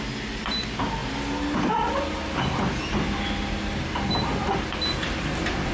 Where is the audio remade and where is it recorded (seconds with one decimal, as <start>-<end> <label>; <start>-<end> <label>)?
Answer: 0.0-5.7 recorded